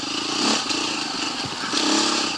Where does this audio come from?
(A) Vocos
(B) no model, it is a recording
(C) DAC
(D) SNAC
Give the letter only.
B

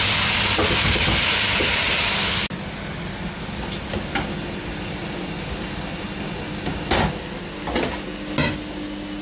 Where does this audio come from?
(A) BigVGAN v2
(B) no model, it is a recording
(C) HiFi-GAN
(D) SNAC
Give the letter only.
B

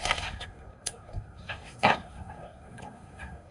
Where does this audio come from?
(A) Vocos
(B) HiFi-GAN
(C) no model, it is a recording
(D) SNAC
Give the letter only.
D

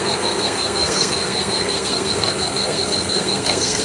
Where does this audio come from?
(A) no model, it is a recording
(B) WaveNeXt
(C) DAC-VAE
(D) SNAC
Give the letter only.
D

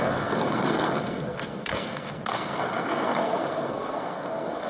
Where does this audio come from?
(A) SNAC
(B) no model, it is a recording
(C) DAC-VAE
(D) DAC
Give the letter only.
A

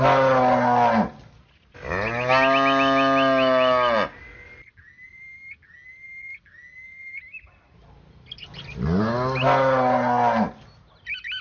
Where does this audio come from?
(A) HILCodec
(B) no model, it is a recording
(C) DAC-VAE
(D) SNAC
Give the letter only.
B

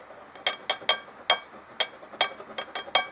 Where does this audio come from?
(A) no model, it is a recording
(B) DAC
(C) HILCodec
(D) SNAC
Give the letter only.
A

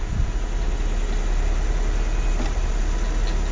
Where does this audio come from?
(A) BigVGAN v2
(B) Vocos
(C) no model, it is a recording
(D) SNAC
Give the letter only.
C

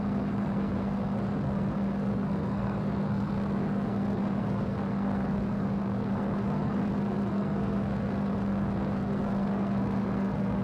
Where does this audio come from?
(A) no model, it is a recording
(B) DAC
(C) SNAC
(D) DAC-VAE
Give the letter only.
C